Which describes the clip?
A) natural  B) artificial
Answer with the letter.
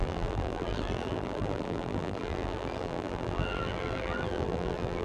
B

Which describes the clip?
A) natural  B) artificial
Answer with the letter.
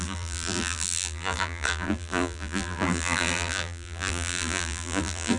B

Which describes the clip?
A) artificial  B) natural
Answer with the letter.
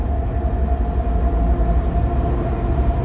B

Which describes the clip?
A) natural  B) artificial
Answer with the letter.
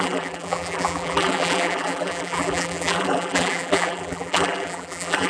B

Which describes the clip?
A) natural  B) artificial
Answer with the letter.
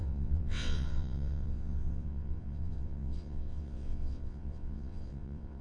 B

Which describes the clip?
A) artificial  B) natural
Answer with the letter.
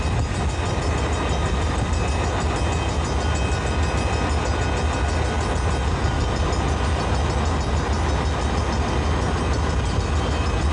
B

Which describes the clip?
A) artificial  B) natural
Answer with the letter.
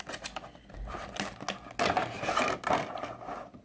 B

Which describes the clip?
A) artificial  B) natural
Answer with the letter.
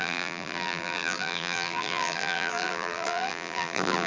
A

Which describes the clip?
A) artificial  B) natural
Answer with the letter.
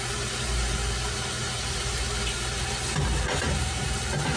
B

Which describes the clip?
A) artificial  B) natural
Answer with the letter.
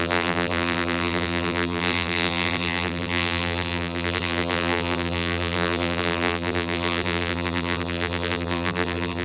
A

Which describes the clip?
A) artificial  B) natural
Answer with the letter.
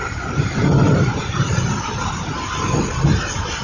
B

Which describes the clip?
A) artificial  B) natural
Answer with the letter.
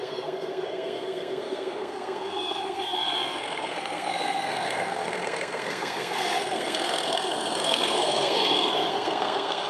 A